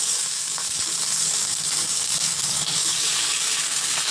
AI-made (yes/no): yes